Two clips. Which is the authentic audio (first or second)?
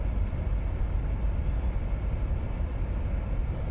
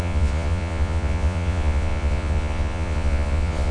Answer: first